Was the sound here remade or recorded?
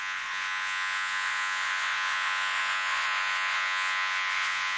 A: remade